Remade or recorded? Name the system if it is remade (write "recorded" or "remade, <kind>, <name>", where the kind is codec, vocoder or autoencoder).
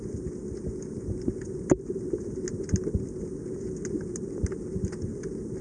recorded